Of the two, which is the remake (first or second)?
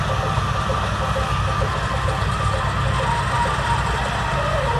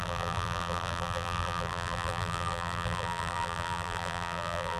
second